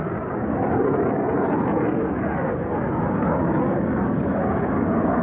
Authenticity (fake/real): real